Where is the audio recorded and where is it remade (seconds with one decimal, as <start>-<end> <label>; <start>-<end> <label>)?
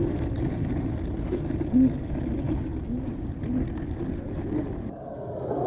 0.0-5.7 recorded